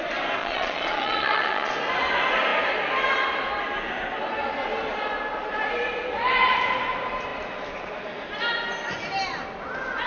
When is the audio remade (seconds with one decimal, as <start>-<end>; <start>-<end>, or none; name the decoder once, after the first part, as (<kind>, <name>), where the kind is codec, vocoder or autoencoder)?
0.4-1.7 (vocoder, Vocos)